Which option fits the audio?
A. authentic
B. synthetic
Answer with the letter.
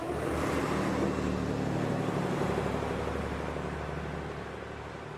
A